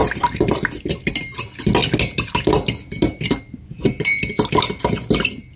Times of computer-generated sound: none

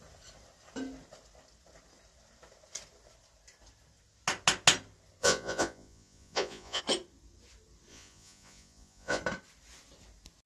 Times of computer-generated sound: 5.2-6.8 (vocoder, Vocos); 7.9-9.2

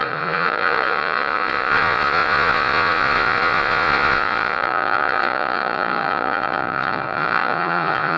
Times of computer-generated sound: 0.0-8.2 (vocoder, Vocos)

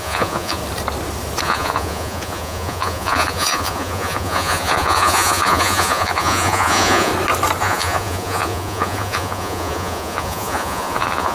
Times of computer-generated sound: 0.0-0.6 (vocoder, Vocos); 1.4-7.1; 7.6-11.3

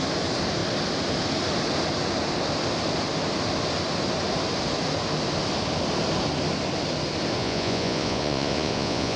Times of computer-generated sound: 7.4-9.2 (vocoder, Vocos)

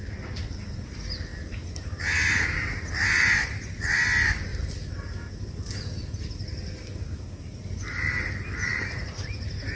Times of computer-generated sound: none

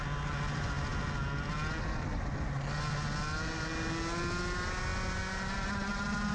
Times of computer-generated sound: none